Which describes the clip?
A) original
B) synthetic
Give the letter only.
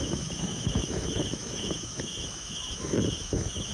B